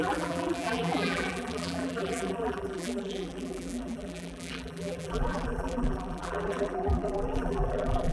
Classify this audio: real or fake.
fake